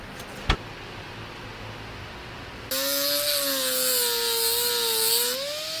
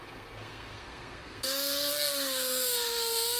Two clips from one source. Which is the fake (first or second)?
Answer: second